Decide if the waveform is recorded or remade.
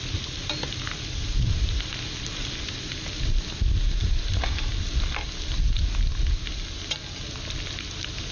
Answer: recorded